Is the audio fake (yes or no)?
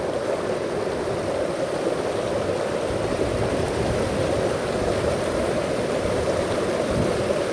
yes